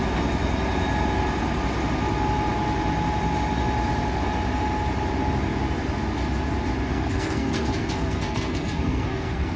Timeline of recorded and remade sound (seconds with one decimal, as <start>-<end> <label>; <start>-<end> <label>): 0.0-6.9 recorded; 6.9-9.6 remade